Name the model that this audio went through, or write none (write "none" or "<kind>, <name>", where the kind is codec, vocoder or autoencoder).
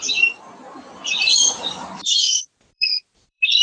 vocoder, BigVGAN v2